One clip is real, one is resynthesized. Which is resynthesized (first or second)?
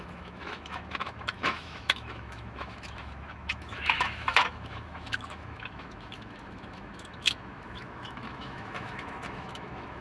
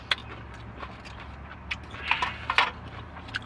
first